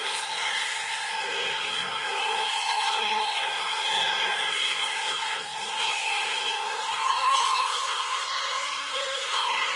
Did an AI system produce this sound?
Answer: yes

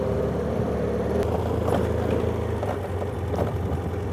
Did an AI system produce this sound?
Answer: no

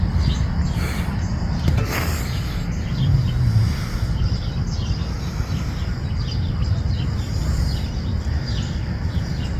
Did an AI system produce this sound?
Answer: no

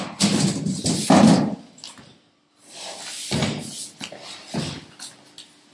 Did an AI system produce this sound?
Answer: no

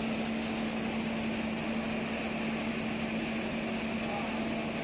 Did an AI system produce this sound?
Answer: no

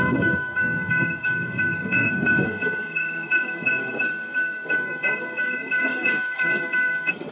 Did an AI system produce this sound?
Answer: yes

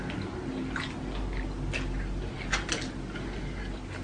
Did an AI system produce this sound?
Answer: no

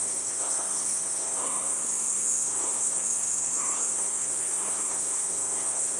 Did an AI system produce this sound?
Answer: yes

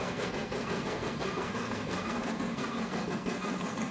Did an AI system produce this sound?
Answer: yes